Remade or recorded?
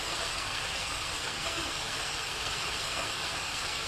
remade